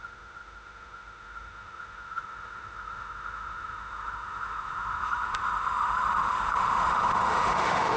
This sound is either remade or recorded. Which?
remade